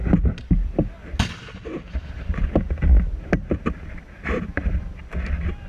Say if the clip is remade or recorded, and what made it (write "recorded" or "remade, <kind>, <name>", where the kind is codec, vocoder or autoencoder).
recorded